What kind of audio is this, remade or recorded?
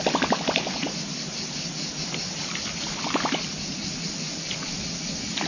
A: recorded